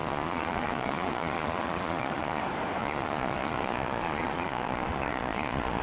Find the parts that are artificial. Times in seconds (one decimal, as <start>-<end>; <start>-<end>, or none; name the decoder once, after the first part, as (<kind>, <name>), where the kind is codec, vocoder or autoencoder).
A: 0.0-2.4 (vocoder, Vocos); 2.8-5.8